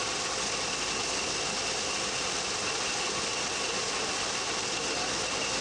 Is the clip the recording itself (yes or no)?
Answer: yes